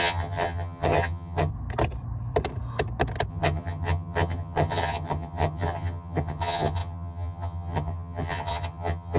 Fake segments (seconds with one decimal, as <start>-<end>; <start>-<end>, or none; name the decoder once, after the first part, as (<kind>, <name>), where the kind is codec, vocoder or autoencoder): 0.0-1.5 (vocoder, HiFi-GAN); 3.3-9.2